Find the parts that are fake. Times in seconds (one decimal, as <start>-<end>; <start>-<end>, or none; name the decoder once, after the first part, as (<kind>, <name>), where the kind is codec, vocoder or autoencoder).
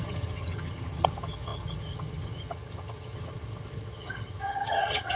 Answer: 0.0-5.2 (vocoder, HiFi-GAN)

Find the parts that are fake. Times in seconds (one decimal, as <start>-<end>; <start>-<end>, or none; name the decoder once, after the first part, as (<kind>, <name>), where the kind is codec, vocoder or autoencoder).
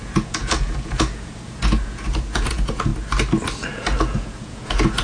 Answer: 0.0-2.9 (vocoder, Vocos); 3.7-5.0